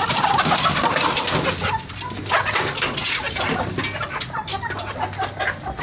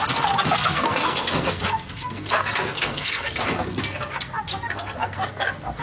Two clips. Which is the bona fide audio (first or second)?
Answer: first